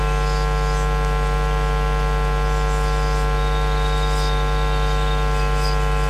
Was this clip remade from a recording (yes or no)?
no